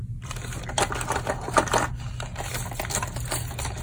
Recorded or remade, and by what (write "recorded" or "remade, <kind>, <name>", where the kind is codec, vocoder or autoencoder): recorded